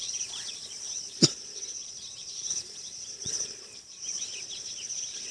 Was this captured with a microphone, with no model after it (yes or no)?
no